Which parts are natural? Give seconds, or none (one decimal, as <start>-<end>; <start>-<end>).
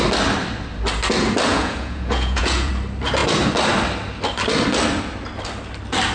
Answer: 0.0-1.5; 2.7-6.1